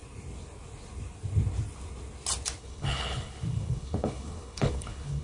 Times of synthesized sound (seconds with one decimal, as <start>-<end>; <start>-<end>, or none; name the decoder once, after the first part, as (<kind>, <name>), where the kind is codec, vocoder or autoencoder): 2.6-5.2 (codec, HILCodec)